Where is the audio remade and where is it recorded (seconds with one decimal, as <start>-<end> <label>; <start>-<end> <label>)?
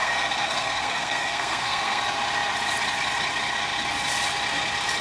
0.0-2.0 remade; 2.0-5.0 recorded